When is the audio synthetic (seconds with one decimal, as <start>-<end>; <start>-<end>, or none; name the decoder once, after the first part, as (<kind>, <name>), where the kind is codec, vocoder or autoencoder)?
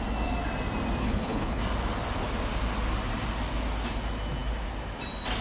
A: 1.0-1.6 (codec, HILCodec)